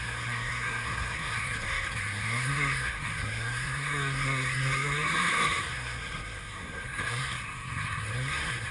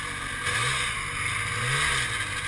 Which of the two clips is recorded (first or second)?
second